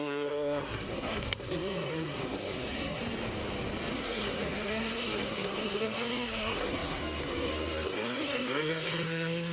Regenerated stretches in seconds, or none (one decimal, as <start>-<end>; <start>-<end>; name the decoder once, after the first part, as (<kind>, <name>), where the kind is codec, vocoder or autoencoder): 0.0-3.0 (codec, SNAC); 3.9-9.5